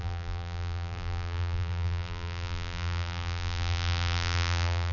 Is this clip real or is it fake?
fake